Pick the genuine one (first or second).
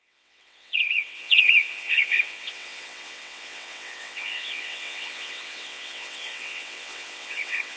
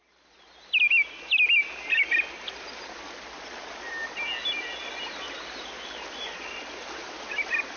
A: second